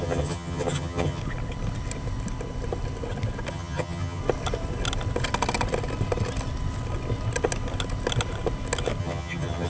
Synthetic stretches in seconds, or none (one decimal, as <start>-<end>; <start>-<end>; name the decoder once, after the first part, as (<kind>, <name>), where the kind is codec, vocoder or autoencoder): 0.0-1.2 (vocoder, HiFi-GAN); 3.5-4.2; 9.0-9.7